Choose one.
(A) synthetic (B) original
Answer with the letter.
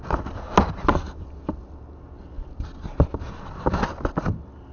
B